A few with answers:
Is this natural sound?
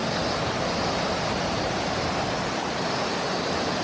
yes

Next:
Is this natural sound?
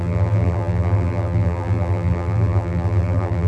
no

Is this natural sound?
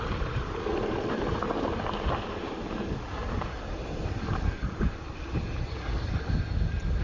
yes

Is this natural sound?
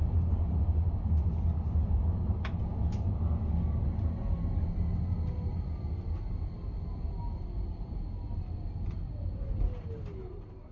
yes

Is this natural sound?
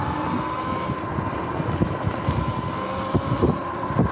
yes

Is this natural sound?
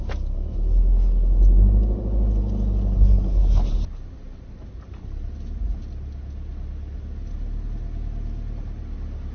yes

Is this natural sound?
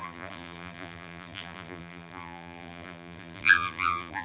no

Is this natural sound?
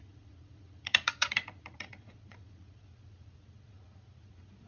no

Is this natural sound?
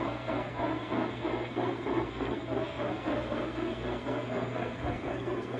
no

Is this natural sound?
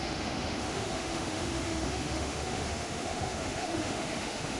no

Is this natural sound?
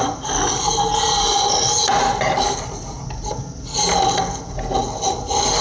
yes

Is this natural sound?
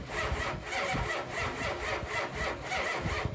yes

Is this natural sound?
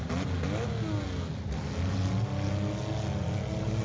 yes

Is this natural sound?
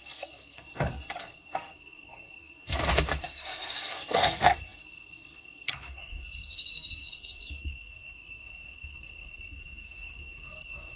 no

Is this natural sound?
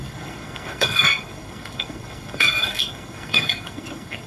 no